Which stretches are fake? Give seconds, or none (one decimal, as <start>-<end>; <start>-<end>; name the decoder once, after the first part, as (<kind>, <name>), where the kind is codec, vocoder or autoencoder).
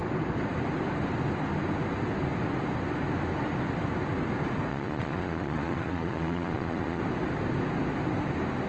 4.7-7.0 (vocoder, Vocos)